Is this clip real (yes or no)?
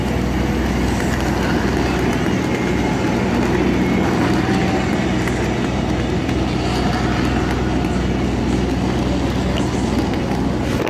yes